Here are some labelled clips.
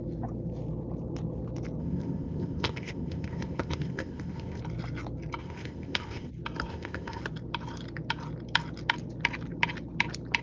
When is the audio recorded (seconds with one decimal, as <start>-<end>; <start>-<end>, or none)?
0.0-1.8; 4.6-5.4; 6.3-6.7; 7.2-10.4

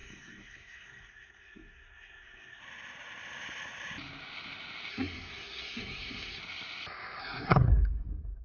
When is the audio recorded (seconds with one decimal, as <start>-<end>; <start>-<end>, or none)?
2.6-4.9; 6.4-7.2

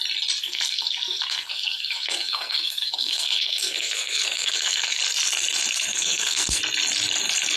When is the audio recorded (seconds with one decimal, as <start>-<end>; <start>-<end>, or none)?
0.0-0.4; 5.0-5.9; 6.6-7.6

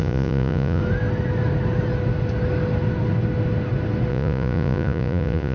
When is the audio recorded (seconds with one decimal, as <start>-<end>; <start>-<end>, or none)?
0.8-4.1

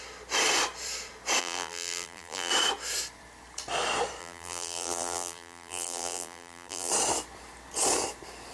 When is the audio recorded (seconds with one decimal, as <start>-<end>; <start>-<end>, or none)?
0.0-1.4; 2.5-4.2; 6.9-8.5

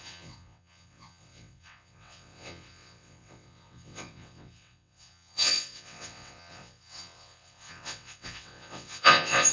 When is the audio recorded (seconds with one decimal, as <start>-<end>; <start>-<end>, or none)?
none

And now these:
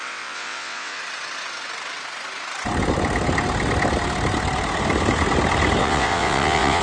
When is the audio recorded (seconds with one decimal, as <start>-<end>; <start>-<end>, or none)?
1.0-5.8

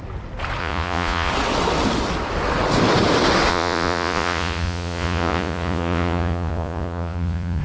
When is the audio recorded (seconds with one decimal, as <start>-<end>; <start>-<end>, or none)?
0.0-0.6; 1.3-3.5